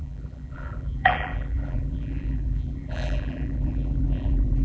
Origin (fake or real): fake